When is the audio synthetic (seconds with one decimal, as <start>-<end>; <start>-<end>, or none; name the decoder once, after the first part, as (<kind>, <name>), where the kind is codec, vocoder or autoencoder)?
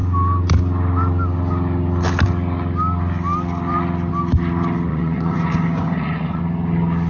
4.9-6.4 (vocoder, Vocos)